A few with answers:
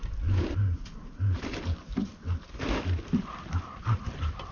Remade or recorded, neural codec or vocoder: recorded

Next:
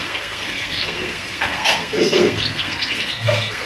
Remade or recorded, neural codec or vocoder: remade, codec, SNAC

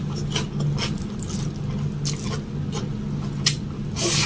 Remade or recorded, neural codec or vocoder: recorded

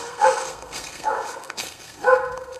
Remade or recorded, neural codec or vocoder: remade, codec, SNAC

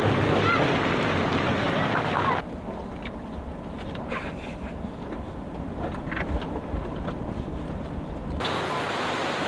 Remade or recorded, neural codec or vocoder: recorded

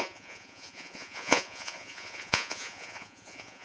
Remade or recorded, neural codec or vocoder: remade, vocoder, Vocos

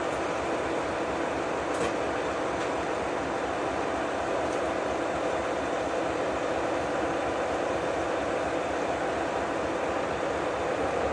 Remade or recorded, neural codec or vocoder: recorded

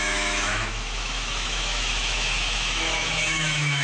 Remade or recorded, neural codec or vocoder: remade, autoencoder, DAC-VAE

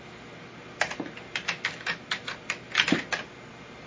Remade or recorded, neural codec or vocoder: recorded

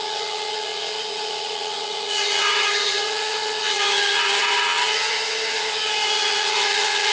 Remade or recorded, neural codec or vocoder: remade, vocoder, HiFi-GAN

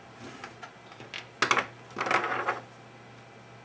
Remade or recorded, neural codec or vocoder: recorded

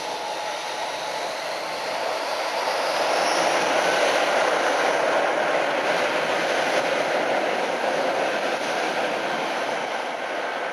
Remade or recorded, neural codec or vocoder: recorded